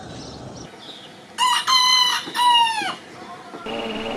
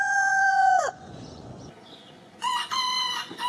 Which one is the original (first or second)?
first